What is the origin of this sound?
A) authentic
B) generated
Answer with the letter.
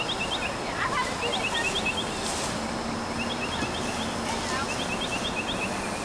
A